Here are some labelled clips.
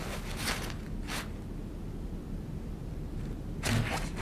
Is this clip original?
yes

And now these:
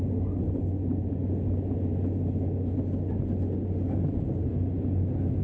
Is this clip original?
yes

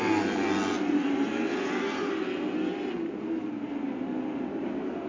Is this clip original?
yes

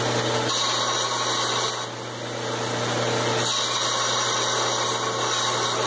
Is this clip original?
yes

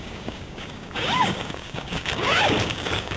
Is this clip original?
no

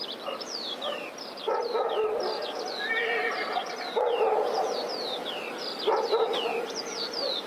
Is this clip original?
yes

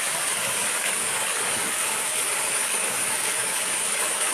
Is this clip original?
no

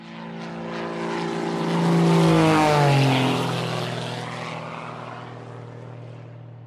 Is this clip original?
yes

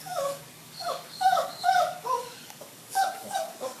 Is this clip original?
no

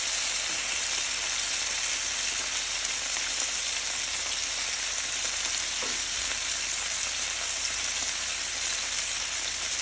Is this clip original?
yes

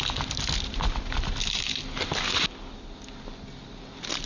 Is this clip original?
yes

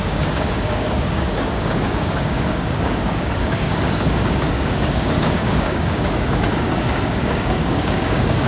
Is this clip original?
no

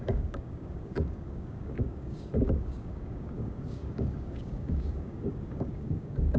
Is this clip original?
no